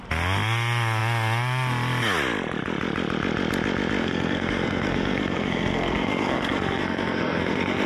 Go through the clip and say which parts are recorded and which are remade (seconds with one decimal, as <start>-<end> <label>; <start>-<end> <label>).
0.0-4.0 recorded; 4.0-7.9 remade